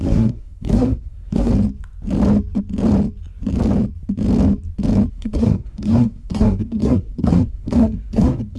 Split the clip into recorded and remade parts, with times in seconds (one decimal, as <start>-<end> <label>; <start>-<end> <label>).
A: 0.0-1.5 remade; 1.5-5.1 recorded; 5.1-8.6 remade